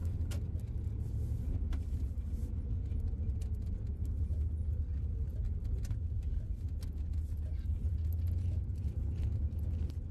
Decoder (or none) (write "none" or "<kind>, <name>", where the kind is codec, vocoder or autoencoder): none